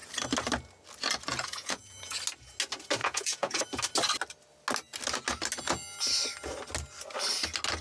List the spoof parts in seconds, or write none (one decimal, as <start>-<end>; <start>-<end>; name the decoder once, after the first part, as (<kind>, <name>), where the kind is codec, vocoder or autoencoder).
1.3-2.2 (vocoder, Vocos); 3.0-3.6